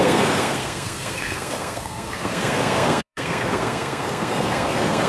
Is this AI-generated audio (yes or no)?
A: yes